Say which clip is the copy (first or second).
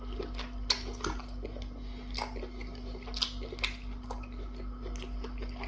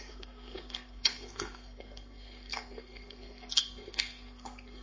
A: second